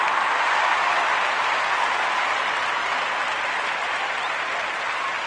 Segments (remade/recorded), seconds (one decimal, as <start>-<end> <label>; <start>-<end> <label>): 0.0-5.3 recorded